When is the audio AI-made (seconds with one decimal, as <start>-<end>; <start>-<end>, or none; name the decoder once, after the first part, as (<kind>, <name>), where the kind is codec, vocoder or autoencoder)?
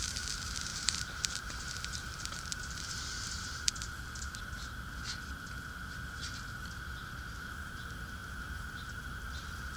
0.0-3.7 (vocoder, BigVGAN v2); 7.5-9.8